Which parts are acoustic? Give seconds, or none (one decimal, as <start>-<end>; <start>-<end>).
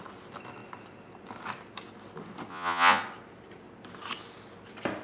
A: 0.0-2.5; 3.0-5.0